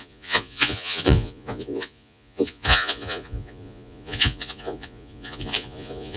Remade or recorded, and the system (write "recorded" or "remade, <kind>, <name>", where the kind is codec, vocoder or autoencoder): remade, vocoder, Vocos